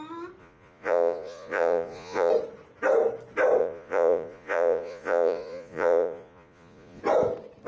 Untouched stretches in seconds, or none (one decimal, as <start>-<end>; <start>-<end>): 0.0-0.4; 2.3-3.6; 7.0-7.7